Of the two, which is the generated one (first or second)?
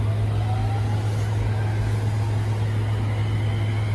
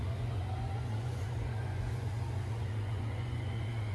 second